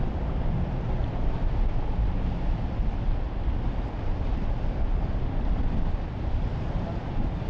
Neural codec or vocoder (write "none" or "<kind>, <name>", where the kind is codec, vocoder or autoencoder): none